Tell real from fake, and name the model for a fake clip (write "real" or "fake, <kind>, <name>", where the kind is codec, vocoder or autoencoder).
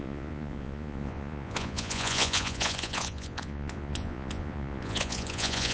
fake, vocoder, Vocos